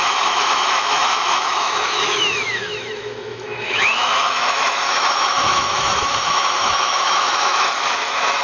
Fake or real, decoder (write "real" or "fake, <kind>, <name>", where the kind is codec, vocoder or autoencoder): fake, autoencoder, DAC-VAE